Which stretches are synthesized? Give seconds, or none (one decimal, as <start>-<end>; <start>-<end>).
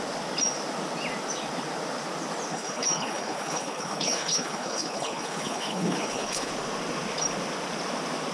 2.5-6.5